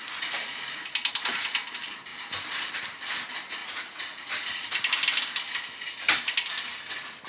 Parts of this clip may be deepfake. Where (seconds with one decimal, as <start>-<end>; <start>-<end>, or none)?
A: 3.6-4.3